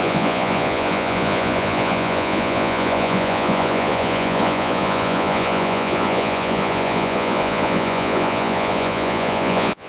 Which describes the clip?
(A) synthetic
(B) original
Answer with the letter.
A